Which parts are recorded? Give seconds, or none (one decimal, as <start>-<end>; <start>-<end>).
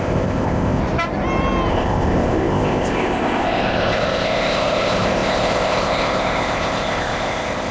0.8-1.7